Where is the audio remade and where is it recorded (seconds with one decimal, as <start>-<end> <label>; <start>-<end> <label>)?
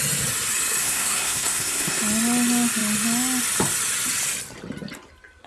0.0-0.8 recorded; 0.8-2.0 remade; 2.0-5.5 recorded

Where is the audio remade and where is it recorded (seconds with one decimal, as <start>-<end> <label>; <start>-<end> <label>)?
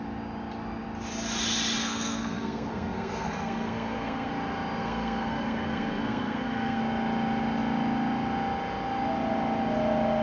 0.0-1.8 recorded; 1.8-4.3 remade; 4.3-4.8 recorded; 4.8-6.8 remade; 6.8-10.2 recorded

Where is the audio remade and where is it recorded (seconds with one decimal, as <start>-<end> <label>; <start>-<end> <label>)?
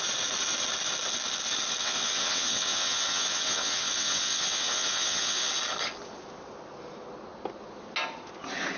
0.0-1.8 recorded; 1.8-5.5 remade; 5.5-8.8 recorded